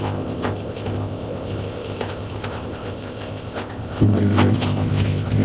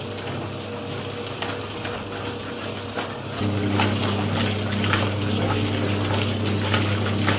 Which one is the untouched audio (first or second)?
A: second